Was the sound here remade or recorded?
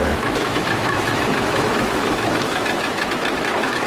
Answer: remade